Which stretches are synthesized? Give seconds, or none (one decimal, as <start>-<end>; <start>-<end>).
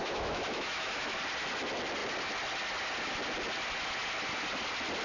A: 0.0-1.2